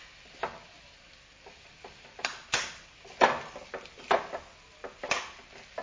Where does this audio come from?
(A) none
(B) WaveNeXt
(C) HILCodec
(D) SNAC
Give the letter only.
A